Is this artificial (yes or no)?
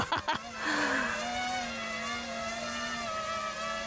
no